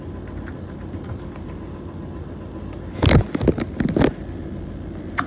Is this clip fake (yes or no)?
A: no